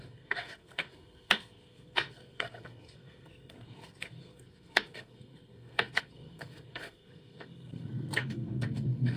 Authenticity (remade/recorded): remade